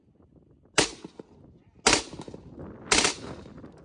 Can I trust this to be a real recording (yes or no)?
yes